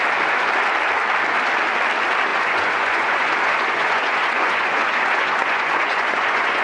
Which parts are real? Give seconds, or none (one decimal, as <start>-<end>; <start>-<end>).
0.0-2.3